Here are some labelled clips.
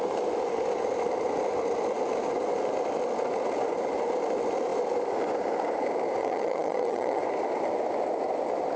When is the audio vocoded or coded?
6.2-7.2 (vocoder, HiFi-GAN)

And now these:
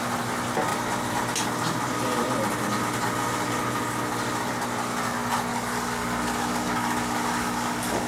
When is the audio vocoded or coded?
5.5-8.1 (codec, DAC)

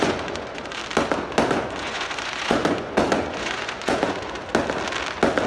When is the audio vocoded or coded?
0.0-0.8 (vocoder, Vocos); 1.5-4.5